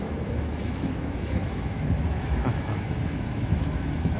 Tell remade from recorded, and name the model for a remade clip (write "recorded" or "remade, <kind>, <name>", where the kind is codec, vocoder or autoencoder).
remade, autoencoder, DAC-VAE